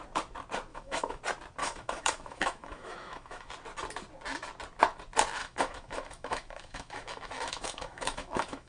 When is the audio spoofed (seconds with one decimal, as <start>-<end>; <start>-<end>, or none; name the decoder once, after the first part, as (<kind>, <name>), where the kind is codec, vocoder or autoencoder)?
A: 0.7-1.2 (autoencoder, DAC-VAE); 1.6-3.5; 5.4-8.7